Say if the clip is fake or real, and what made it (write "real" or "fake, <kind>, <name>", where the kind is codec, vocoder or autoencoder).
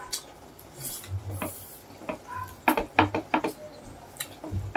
real